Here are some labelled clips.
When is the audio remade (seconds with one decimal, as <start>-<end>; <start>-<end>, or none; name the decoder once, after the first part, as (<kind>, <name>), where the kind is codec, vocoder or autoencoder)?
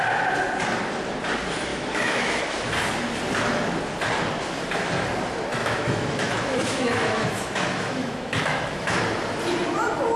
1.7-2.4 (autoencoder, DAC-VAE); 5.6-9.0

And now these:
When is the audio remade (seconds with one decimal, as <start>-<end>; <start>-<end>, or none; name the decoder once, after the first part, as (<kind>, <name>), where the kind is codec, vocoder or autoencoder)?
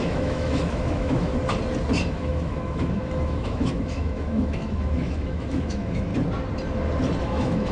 0.0-1.3 (autoencoder, DAC-VAE); 2.1-6.1; 7.2-7.7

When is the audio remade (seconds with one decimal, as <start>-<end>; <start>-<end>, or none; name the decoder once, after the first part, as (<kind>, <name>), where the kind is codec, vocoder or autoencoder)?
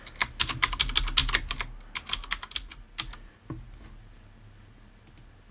none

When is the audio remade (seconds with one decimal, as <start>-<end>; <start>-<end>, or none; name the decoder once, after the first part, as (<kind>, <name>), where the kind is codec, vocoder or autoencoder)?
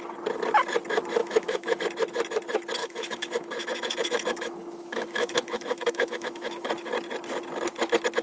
1.2-1.8 (autoencoder, DAC-VAE); 2.8-6.7